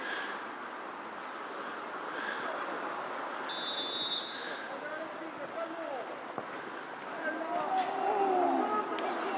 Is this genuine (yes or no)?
yes